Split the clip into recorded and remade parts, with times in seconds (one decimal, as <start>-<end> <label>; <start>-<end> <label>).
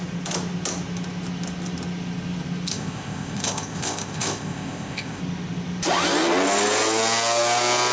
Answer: 0.0-2.7 recorded; 2.7-5.2 remade; 5.2-7.9 recorded